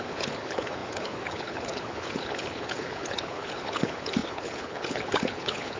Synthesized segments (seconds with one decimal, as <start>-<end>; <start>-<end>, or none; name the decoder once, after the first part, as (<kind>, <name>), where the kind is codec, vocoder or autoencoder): 0.0-5.8 (codec, HILCodec)